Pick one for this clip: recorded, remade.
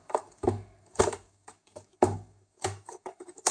remade